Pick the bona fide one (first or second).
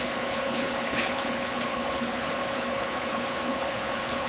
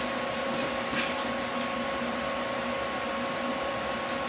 second